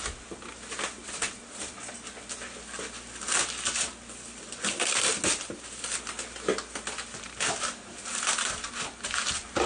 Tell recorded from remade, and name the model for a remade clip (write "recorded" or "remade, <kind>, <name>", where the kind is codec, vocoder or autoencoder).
recorded